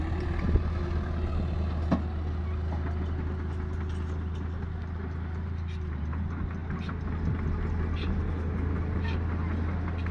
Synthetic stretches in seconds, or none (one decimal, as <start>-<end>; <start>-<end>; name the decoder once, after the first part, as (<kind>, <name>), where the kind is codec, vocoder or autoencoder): none